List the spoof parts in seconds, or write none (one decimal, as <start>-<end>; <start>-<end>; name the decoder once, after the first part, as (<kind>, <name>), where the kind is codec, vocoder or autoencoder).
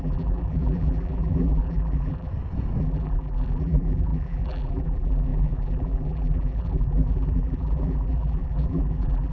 0.0-2.3 (vocoder, BigVGAN v2); 2.8-9.3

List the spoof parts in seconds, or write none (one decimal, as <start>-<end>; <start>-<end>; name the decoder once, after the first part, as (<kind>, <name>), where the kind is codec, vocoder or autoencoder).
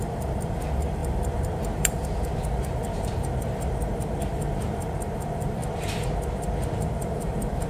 0.0-5.6 (vocoder, BigVGAN v2); 6.8-7.7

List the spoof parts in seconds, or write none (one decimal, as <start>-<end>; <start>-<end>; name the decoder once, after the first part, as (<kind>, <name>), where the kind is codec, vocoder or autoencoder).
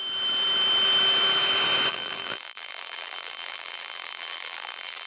1.9-5.1 (vocoder, BigVGAN v2)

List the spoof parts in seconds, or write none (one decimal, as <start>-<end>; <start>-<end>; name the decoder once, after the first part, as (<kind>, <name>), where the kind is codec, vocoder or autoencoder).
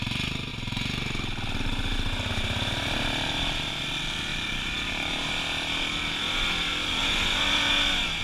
4.3-5.1 (vocoder, BigVGAN v2); 6.7-7.7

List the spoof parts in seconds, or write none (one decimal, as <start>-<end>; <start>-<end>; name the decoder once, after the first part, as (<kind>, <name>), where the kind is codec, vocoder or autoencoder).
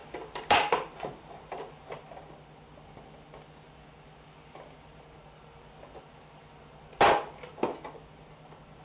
0.0-2.3 (vocoder, BigVGAN v2)